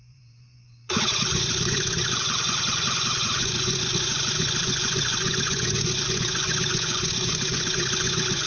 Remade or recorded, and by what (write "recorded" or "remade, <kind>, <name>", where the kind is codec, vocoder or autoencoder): remade, vocoder, Vocos